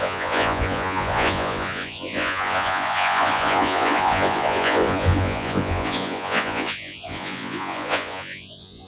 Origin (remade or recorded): remade